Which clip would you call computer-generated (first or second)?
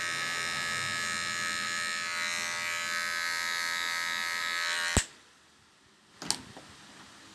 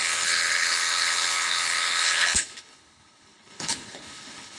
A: second